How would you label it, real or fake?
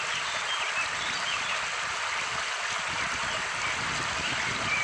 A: real